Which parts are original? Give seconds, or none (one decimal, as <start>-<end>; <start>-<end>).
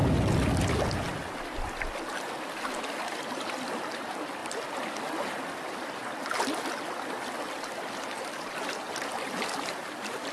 0.0-10.3